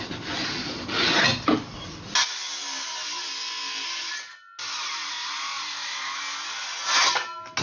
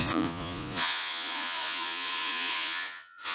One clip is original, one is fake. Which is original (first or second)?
first